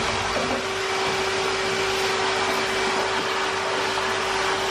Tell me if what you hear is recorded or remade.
recorded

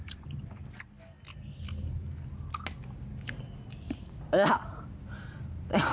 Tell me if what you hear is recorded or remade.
recorded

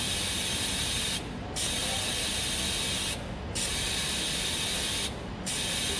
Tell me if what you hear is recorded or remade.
recorded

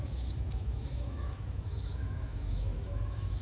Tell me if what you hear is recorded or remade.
remade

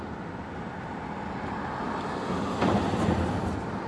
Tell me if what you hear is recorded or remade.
recorded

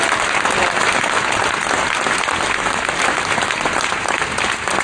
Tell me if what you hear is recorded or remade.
recorded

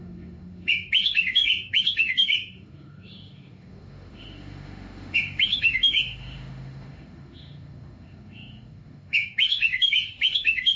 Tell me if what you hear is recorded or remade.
remade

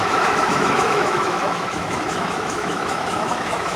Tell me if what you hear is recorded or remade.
remade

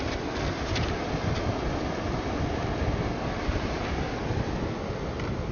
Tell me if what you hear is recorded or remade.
recorded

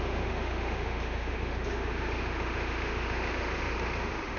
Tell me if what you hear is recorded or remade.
remade